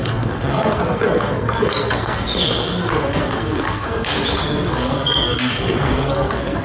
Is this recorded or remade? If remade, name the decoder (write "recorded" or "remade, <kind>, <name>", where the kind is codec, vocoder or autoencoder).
remade, codec, SNAC